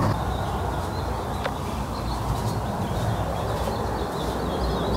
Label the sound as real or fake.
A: real